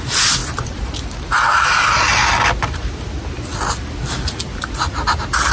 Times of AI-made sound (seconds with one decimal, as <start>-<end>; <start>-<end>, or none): none